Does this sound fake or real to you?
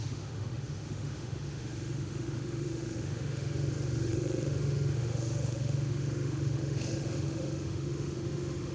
fake